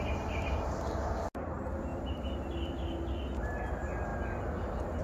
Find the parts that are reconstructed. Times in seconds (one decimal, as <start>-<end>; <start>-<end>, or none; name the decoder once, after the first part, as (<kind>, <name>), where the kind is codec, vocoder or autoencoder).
none